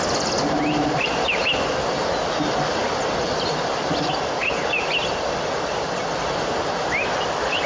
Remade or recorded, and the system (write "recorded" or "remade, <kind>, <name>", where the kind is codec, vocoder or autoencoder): recorded